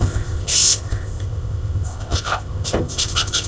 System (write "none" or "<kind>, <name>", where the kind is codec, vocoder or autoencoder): codec, ZipCodec